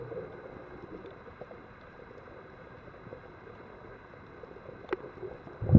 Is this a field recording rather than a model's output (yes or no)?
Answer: yes